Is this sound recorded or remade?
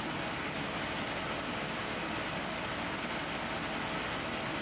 recorded